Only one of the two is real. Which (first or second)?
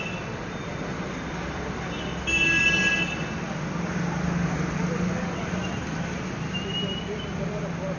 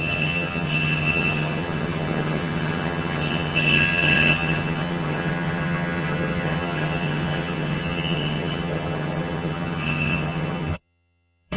first